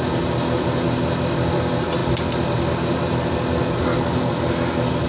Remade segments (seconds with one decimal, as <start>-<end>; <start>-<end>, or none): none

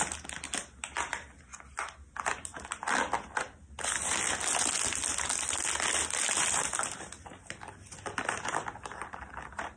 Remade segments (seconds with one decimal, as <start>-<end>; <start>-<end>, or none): none

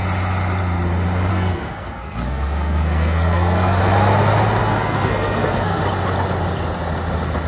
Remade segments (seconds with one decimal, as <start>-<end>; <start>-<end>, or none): 1.3-3.8; 4.6-5.8